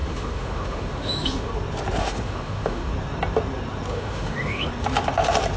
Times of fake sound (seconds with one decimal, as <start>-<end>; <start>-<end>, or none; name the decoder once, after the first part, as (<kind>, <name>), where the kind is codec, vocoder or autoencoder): 0.0-1.5 (autoencoder, DAC-VAE); 2.0-2.9; 3.9-4.7